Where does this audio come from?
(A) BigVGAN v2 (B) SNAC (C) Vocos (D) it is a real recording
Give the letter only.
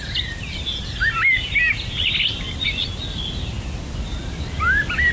D